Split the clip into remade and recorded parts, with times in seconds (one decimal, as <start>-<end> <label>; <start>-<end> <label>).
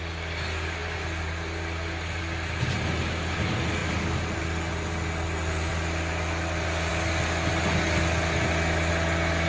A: 0.0-9.5 recorded